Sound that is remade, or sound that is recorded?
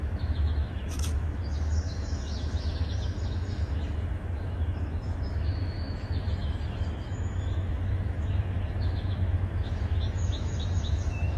remade